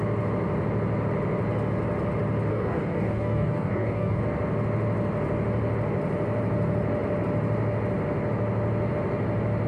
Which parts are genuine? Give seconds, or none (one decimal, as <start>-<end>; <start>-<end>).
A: 0.0-2.5; 4.2-9.7